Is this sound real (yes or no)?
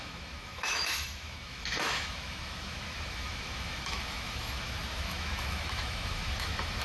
no